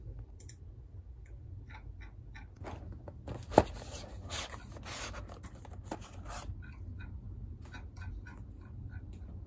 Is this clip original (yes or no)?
yes